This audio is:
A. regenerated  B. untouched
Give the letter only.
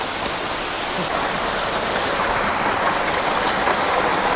B